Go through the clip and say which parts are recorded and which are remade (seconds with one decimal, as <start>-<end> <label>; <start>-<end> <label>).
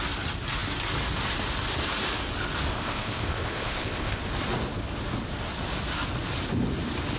0.0-2.7 recorded; 2.7-4.2 remade; 4.2-7.2 recorded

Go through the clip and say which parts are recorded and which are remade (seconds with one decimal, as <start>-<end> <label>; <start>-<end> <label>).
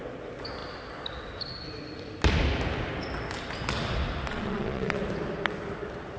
0.0-4.3 recorded; 4.3-5.0 remade; 5.0-6.2 recorded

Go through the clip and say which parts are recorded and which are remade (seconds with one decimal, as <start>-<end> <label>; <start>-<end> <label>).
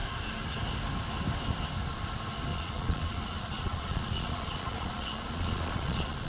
0.0-2.5 recorded; 2.5-6.3 remade